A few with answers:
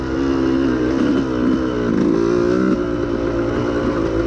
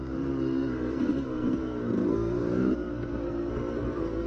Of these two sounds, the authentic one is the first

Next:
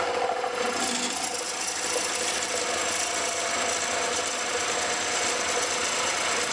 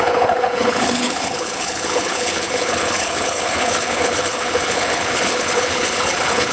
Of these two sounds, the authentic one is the first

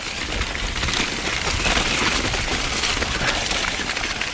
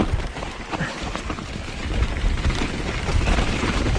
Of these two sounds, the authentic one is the first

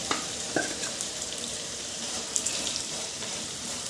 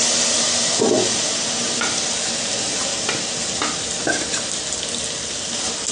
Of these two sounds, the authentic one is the second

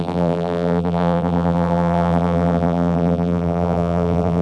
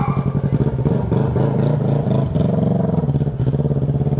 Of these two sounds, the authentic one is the second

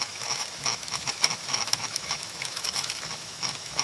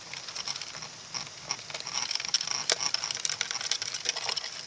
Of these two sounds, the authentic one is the second